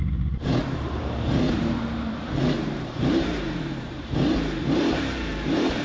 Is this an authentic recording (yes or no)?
no